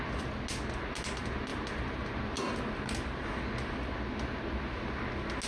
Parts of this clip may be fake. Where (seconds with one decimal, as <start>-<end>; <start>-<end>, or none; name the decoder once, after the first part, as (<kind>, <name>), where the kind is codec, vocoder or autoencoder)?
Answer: none

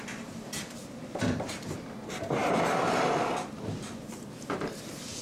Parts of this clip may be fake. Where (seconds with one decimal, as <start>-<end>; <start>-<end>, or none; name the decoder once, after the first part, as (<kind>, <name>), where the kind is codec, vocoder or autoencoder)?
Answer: 0.0-5.2 (vocoder, BigVGAN v2)